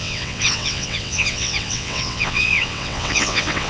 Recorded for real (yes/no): no